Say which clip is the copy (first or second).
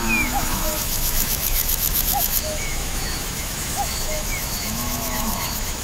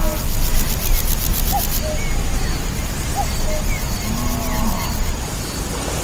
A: first